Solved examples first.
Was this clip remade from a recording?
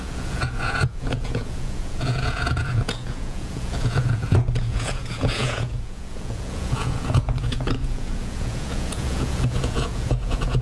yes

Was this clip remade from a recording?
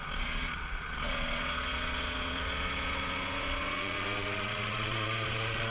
yes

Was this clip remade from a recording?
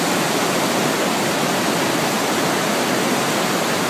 no